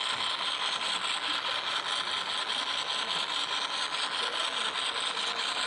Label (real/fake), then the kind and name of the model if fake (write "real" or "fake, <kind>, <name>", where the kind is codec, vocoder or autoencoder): real